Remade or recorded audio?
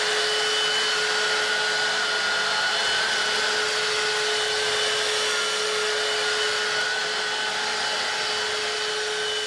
recorded